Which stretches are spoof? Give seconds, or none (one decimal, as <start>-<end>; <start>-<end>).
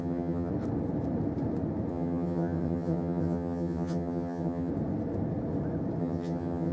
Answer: 0.0-0.5; 1.9-4.7; 6.0-6.7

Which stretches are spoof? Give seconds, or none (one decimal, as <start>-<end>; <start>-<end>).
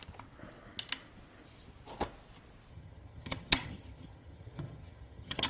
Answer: 2.7-5.5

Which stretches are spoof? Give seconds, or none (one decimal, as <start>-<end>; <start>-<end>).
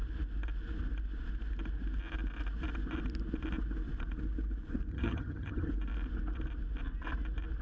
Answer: 4.9-5.7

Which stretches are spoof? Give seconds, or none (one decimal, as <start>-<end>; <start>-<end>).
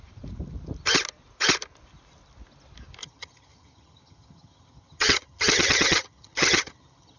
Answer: 3.0-7.2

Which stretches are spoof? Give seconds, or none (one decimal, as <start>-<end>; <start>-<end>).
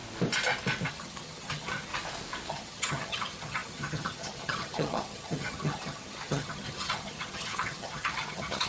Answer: 0.9-1.9; 2.5-8.7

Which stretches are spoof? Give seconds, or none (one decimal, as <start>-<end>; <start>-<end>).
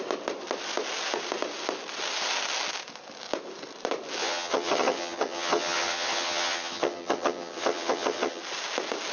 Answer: 4.2-8.4